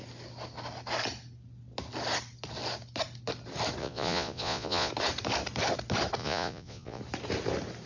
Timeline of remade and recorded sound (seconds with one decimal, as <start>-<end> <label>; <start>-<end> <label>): 0.0-3.8 recorded; 3.8-4.9 remade; 4.9-6.2 recorded; 6.2-7.0 remade; 7.0-7.9 recorded